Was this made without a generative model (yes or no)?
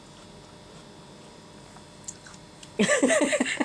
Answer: no